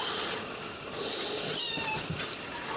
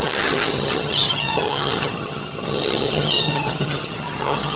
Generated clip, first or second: second